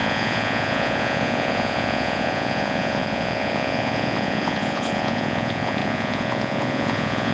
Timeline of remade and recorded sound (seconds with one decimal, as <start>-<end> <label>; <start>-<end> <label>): 0.0-7.3 remade

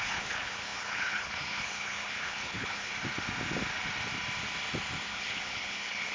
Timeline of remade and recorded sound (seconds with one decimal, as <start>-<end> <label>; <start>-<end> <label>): 0.0-2.9 remade; 2.9-5.0 recorded; 5.0-6.1 remade

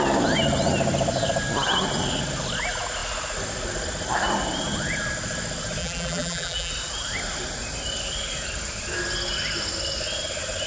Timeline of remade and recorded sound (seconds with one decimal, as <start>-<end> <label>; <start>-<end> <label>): 0.0-5.8 recorded; 5.8-6.7 remade; 6.7-10.7 recorded

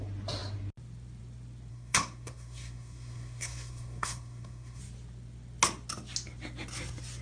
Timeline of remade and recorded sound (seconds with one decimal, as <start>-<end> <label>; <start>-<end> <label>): 0.0-1.7 recorded; 1.7-4.8 remade; 4.8-7.2 recorded

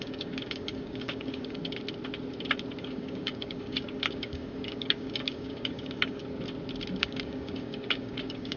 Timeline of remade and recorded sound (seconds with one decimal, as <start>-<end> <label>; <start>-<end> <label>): 0.0-1.6 remade; 1.6-2.8 recorded; 2.8-6.2 remade; 6.2-7.0 recorded; 7.0-8.6 remade

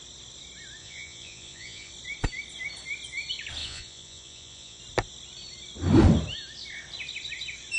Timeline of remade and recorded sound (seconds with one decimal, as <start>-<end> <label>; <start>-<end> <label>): 0.0-0.8 recorded; 0.8-1.9 remade; 1.9-3.6 recorded; 3.6-4.8 remade; 4.8-7.8 recorded